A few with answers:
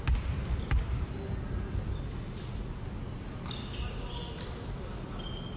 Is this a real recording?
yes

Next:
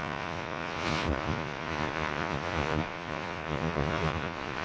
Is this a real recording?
no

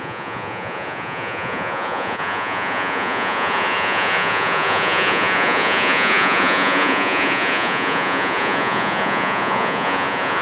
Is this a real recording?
no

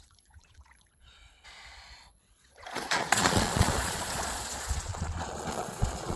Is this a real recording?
no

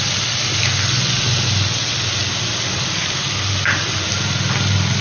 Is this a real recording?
yes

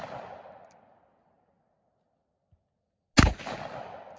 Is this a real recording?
yes